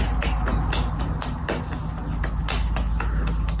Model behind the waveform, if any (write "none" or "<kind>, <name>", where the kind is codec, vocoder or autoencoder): none